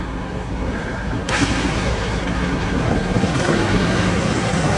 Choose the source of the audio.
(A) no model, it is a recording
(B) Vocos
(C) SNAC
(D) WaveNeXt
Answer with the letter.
C